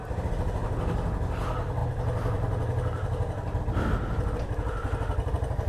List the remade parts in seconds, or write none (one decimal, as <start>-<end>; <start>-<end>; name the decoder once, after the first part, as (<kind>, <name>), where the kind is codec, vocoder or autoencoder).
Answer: none